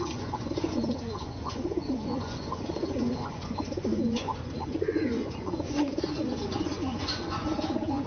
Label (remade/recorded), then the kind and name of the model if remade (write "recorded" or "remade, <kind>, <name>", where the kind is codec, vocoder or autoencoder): remade, vocoder, Vocos